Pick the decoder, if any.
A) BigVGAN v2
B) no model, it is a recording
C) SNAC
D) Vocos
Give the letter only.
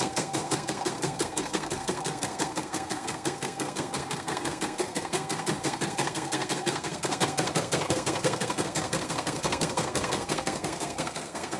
C